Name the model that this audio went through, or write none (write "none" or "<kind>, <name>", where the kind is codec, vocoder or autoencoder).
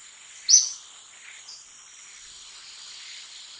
none